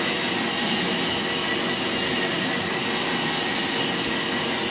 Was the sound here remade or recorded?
recorded